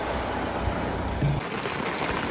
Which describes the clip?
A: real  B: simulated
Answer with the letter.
A